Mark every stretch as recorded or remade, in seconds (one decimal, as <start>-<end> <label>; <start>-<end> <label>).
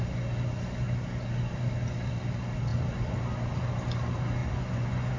0.0-4.4 recorded; 4.4-5.2 remade